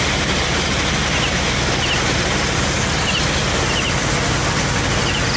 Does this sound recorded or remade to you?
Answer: recorded